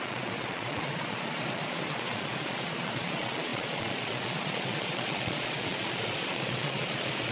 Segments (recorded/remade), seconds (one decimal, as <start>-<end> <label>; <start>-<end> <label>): 0.0-7.3 remade